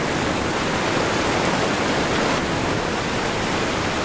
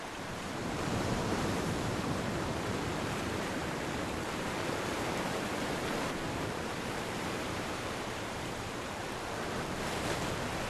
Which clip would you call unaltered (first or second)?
first